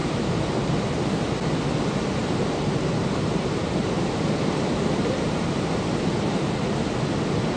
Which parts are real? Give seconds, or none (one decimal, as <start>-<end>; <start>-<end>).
0.6-2.2; 6.8-7.6